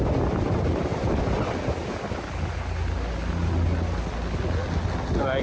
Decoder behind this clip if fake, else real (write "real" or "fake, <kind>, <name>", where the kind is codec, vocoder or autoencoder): real